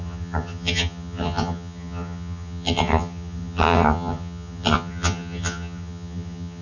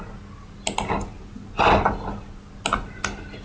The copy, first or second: first